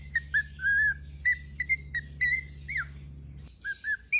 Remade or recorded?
recorded